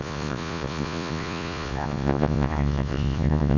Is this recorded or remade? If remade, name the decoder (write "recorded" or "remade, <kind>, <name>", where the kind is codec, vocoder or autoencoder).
remade, vocoder, Vocos